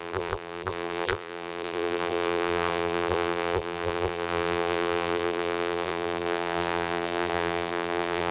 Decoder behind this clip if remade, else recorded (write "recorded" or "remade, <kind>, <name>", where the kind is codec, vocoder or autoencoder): remade, vocoder, BigVGAN v2